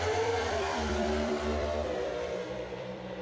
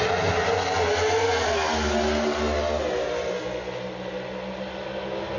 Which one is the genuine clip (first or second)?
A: second